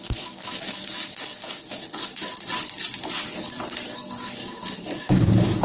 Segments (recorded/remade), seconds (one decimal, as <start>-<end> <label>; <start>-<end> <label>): 0.0-2.2 remade; 2.2-4.2 recorded; 4.2-5.6 remade